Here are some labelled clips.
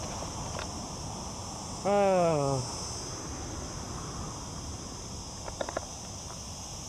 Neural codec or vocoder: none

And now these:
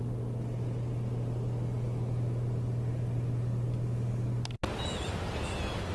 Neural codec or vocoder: none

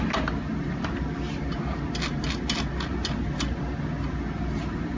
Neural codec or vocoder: none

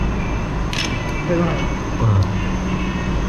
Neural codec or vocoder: none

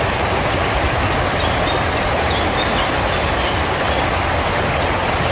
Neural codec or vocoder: none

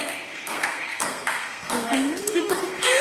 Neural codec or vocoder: codec, SNAC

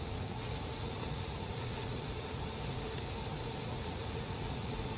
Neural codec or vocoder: vocoder, Vocos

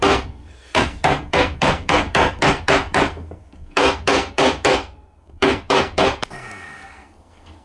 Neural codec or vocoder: codec, SNAC